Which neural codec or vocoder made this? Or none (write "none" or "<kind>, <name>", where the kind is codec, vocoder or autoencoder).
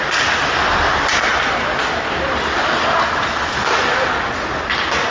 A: none